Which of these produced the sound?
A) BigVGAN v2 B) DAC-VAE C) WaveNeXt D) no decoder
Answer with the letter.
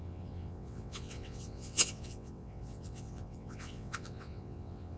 C